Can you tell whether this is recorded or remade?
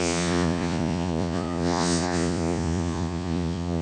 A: remade